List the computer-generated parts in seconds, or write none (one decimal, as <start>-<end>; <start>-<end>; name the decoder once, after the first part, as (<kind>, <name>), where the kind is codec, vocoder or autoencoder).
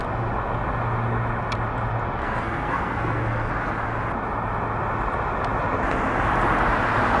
2.2-3.5 (codec, SNAC)